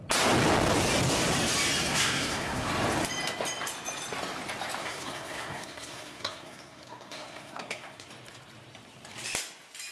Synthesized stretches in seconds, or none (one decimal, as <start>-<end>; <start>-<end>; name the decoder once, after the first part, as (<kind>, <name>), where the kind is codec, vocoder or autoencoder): 1.9-2.7 (codec, SNAC); 4.8-8.1